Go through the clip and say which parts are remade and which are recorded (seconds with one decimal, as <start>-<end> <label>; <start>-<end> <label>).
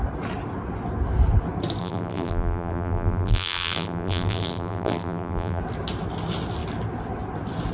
0.0-1.8 recorded; 1.8-5.6 remade; 5.6-7.7 recorded